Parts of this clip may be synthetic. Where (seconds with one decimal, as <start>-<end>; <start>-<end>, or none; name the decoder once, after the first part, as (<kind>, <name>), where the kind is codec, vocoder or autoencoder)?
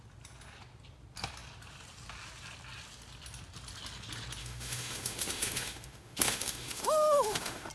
4.4-7.7 (autoencoder, DAC-VAE)